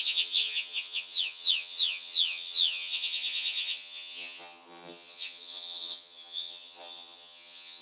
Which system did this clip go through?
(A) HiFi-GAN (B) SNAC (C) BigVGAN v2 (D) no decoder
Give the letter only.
A